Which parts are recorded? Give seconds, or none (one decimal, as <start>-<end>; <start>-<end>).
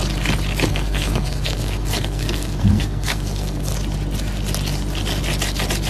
0.0-0.7; 3.7-5.9